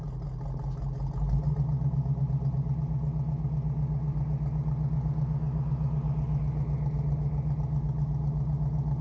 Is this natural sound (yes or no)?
yes